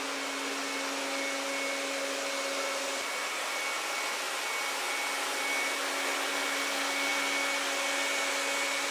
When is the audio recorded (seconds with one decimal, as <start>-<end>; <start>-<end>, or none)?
0.0-8.9